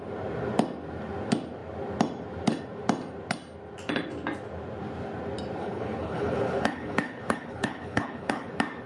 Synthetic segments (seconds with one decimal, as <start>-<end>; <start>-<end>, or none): 5.6-8.5